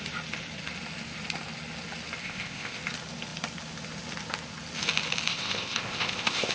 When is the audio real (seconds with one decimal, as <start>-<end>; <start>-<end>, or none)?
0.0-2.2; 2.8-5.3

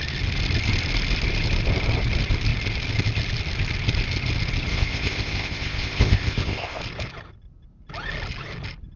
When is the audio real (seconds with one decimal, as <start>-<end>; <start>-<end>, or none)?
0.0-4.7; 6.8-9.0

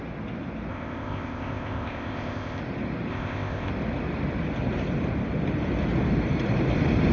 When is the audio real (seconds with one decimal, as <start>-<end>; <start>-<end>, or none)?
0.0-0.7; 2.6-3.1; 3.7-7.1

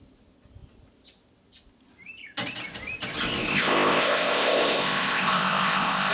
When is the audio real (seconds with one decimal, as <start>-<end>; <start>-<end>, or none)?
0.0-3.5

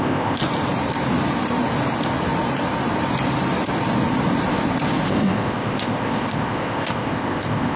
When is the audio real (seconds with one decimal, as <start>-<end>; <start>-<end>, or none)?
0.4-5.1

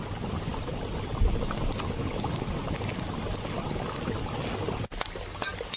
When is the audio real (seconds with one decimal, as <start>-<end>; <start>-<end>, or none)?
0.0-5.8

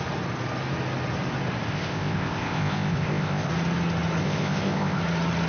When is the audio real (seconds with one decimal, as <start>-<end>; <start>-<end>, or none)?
0.0-1.7; 3.5-4.2; 5.0-5.5

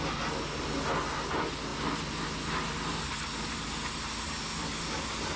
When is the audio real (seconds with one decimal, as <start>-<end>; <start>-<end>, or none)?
0.0-5.4